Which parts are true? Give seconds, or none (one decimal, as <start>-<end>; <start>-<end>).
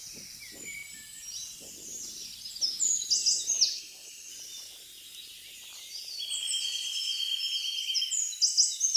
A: 0.0-3.7; 4.3-9.0